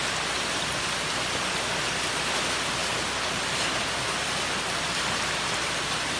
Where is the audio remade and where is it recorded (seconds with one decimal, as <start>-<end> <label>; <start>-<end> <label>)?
0.0-6.2 recorded